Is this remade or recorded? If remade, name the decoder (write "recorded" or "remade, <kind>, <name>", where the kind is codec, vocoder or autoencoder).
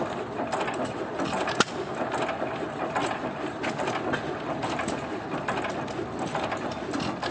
recorded